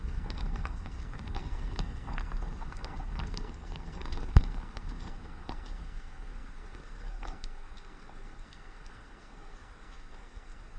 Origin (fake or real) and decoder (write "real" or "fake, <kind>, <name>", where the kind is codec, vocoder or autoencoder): fake, codec, SNAC